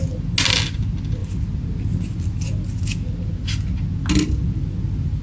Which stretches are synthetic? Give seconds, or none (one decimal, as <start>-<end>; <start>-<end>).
none